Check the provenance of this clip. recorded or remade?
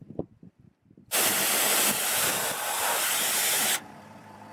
remade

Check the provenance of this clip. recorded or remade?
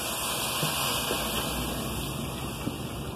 recorded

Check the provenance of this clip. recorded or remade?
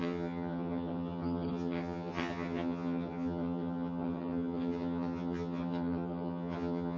remade